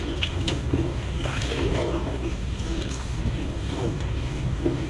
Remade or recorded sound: remade